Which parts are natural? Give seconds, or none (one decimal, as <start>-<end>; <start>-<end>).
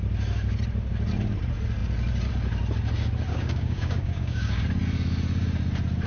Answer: 0.0-3.3; 4.6-6.1